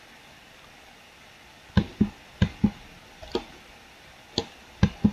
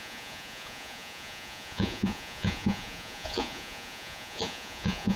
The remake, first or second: second